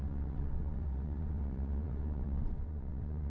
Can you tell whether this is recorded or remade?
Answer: remade